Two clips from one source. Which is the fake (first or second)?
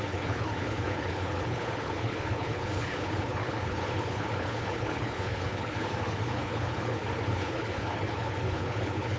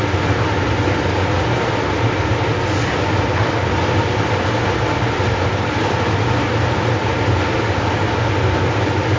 first